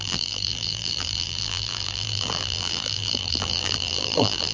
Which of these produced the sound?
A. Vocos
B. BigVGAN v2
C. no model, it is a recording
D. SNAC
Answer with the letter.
B